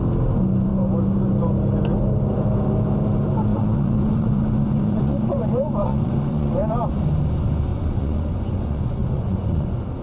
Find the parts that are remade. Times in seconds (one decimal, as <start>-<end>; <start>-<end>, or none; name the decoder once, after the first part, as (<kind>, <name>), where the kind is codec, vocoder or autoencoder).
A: 3.5-6.9 (vocoder, Vocos); 7.7-10.0

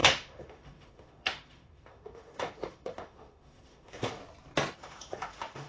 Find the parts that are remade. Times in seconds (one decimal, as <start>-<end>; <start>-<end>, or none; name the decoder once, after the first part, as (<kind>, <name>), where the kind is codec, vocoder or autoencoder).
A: 0.0-4.2 (autoencoder, DAC-VAE); 4.7-5.7

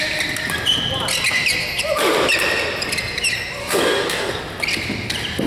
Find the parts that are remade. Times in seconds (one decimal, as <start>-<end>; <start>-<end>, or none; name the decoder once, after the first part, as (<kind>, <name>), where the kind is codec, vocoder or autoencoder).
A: 3.6-4.3 (codec, DAC)

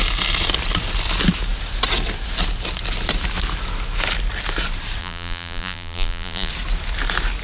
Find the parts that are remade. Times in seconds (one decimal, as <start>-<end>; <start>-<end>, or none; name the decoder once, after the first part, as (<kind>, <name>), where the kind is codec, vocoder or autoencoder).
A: 5.0-6.5 (vocoder, BigVGAN v2)

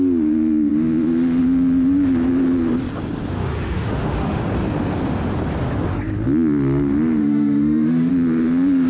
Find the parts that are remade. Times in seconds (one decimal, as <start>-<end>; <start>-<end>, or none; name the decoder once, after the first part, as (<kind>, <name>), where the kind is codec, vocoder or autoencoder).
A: 3.4-4.4 (autoencoder, DAC-VAE); 7.2-8.1

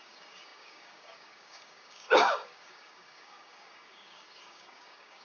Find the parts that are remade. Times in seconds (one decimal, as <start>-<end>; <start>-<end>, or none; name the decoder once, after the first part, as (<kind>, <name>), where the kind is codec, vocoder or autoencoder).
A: 0.0-5.2 (codec, DAC)